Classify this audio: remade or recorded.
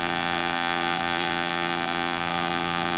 remade